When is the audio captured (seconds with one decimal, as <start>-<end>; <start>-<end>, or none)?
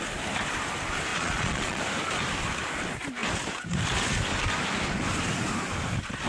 0.0-1.1; 1.8-6.3